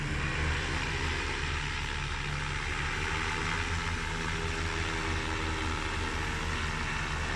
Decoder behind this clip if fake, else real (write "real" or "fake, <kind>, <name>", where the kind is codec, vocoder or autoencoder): real